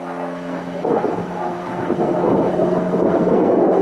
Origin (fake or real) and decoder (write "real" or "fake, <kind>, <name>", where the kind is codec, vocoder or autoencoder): fake, codec, SNAC